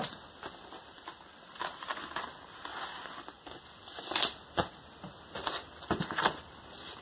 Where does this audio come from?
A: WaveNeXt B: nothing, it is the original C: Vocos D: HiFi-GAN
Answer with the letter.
B